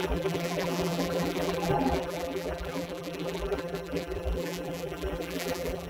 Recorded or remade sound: remade